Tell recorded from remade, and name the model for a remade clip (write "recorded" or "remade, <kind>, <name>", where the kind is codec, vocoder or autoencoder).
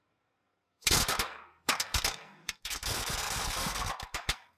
remade, codec, SNAC